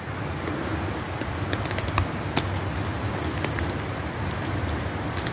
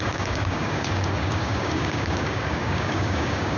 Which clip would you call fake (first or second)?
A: second